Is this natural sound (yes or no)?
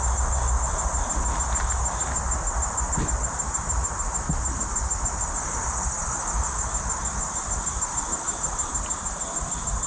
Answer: yes